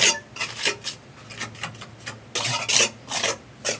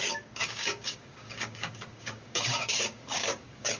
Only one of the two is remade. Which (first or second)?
second